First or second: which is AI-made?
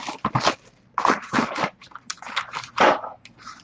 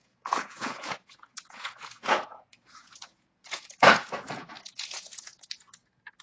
second